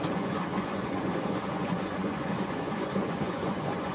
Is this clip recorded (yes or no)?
no